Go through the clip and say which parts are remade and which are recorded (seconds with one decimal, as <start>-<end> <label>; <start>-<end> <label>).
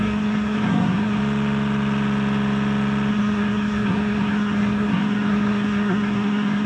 0.0-1.2 remade; 1.2-3.1 recorded; 3.1-6.7 remade